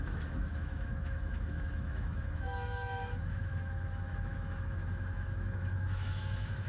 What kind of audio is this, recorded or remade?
remade